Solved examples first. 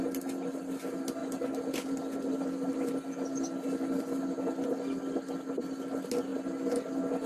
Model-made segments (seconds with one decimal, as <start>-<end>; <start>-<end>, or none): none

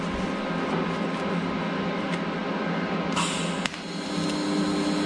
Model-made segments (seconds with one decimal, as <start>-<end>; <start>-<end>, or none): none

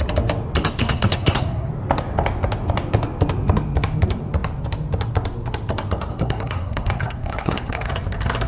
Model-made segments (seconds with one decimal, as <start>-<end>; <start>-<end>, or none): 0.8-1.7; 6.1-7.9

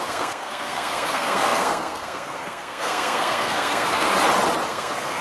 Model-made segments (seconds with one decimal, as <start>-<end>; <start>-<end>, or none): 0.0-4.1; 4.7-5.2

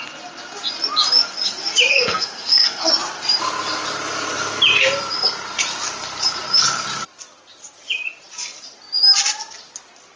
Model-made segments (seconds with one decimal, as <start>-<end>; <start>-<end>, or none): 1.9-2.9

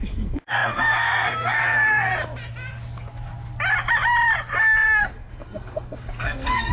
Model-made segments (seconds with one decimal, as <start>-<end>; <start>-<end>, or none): 0.0-2.1; 5.0-6.7

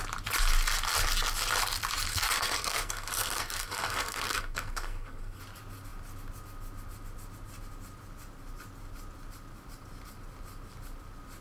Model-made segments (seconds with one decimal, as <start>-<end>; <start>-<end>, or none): 2.1-5.4

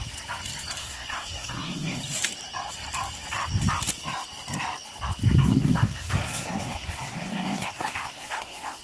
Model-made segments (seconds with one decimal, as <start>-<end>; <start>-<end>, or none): 0.8-2.0; 5.4-8.8